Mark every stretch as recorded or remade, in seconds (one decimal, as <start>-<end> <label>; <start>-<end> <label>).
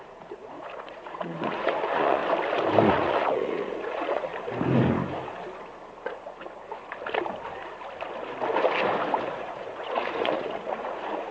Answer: 0.0-2.2 remade; 2.2-2.9 recorded; 2.9-4.3 remade; 4.3-9.2 recorded; 9.2-11.3 remade